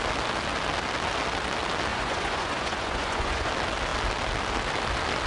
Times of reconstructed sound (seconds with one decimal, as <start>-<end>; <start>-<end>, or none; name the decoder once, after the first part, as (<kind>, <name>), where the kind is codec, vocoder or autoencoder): 1.9-3.5 (vocoder, Vocos)